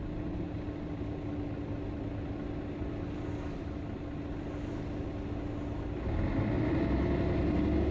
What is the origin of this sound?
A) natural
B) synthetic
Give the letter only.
A